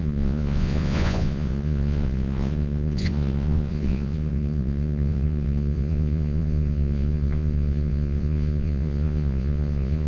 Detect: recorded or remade remade